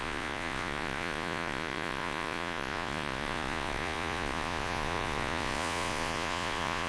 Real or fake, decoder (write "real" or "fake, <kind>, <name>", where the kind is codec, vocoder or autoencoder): fake, vocoder, Vocos